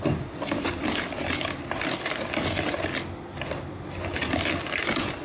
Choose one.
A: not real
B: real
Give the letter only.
B